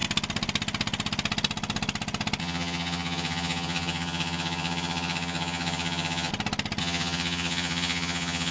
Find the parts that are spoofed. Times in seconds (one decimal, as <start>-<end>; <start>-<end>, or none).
2.4-6.3; 6.8-8.5